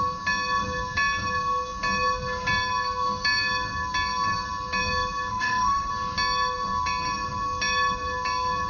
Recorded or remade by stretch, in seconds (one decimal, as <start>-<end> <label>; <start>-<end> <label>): 0.0-5.3 recorded; 5.3-5.9 remade; 5.9-8.7 recorded